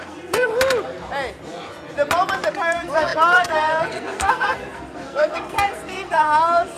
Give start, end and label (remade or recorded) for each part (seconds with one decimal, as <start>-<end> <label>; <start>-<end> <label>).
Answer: 0.0-0.5 remade; 0.5-2.5 recorded; 2.5-6.8 remade